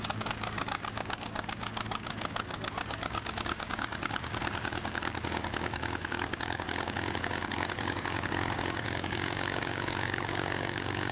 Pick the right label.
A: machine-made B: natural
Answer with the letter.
A